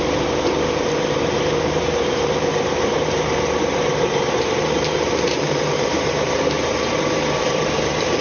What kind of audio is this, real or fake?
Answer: fake